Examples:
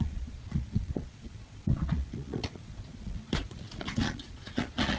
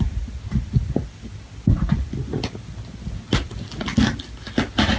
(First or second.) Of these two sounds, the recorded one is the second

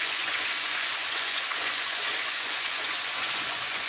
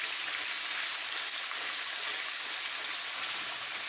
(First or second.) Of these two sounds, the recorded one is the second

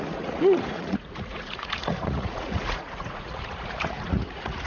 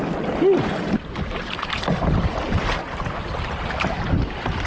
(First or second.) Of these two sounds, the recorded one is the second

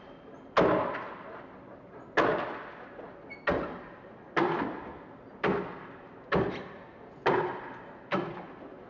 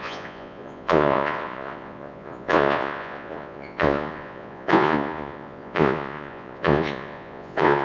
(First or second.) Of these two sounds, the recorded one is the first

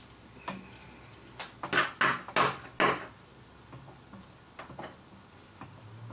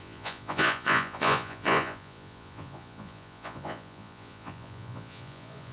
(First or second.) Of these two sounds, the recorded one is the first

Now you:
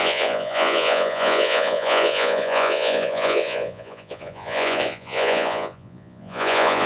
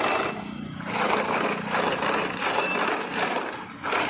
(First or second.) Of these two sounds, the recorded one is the second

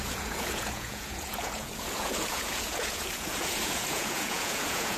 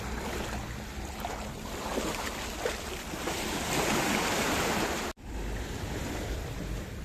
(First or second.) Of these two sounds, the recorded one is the second